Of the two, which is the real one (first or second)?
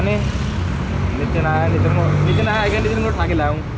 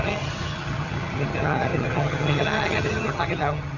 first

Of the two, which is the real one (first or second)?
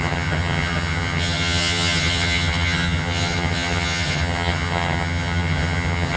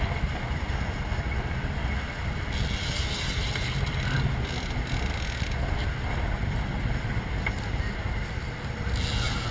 second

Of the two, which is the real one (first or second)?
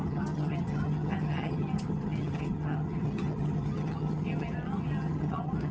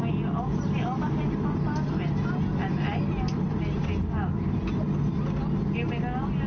second